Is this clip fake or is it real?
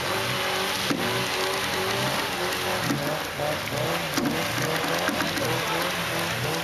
real